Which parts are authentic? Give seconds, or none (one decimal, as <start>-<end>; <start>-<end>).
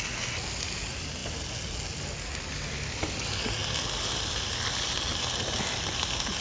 0.0-6.4